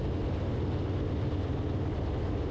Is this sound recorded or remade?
recorded